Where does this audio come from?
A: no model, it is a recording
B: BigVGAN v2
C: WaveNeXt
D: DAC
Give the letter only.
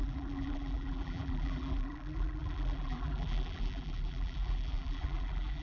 B